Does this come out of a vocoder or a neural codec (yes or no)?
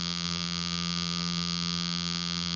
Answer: yes